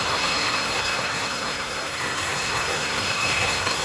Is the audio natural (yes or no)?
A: no